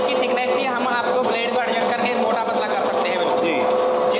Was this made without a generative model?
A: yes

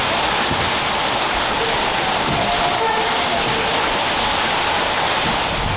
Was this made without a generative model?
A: yes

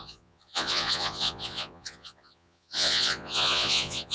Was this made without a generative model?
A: no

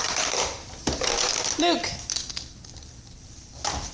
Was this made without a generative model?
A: yes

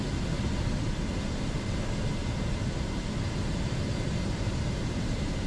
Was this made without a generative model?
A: yes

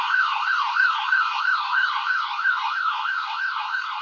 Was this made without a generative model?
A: no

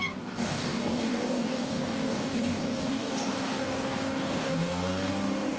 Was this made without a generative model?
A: no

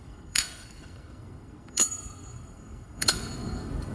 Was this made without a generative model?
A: no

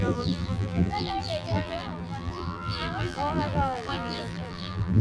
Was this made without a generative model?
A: no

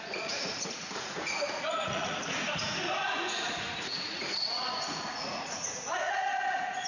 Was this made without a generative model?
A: no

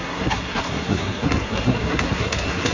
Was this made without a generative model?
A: no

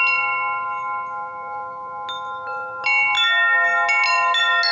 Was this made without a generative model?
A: yes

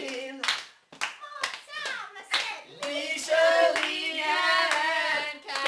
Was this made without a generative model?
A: yes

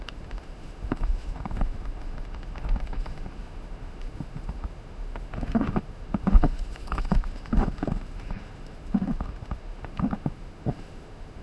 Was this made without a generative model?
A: no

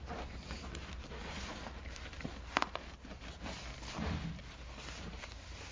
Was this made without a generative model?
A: yes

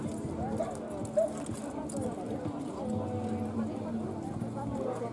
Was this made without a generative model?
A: yes